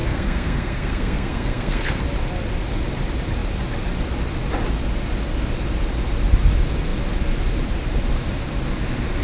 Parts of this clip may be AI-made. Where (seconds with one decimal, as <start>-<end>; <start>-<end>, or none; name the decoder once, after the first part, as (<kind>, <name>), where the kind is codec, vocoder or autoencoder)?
0.0-2.0 (codec, SNAC)